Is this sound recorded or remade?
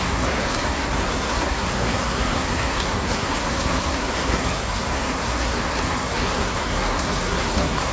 remade